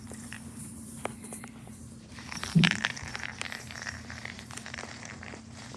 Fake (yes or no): yes